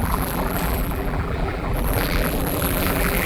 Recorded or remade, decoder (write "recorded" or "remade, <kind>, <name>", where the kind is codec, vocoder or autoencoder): remade, vocoder, BigVGAN v2